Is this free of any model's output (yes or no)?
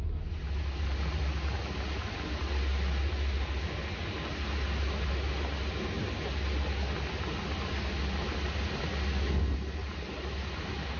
yes